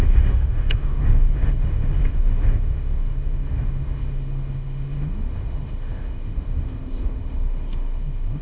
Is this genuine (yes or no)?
no